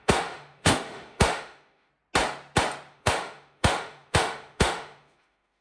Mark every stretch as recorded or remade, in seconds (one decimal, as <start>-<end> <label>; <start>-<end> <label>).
0.0-1.9 remade; 1.9-2.9 recorded; 2.9-5.6 remade